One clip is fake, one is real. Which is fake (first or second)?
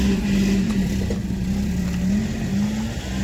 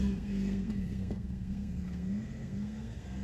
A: second